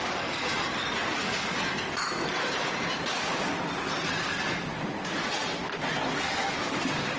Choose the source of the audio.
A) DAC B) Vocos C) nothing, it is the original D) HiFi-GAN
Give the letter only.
C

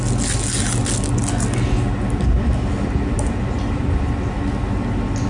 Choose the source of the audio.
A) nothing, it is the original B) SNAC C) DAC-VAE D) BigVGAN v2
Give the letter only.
A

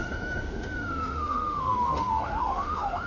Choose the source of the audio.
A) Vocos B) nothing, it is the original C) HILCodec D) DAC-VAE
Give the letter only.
D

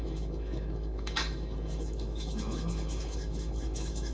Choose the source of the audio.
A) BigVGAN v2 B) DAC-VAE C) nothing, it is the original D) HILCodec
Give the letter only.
B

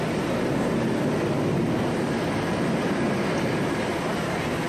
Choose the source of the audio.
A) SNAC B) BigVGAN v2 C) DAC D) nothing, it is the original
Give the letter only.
D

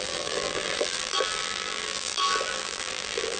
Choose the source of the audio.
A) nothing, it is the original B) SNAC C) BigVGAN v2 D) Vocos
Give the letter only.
C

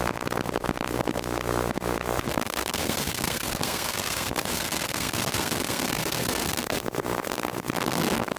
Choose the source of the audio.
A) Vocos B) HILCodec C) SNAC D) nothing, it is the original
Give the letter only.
C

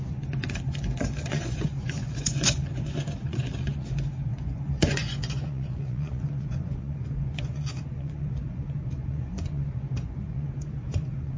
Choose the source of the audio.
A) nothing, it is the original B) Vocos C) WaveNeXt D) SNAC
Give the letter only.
B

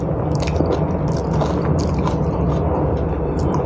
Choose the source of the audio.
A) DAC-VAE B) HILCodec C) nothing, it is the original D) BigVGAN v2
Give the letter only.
C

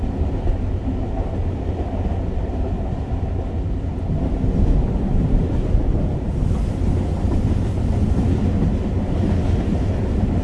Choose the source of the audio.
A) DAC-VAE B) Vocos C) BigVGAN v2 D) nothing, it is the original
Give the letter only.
D